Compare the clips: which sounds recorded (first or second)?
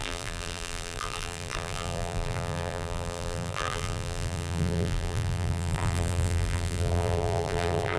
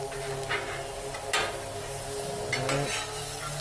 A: second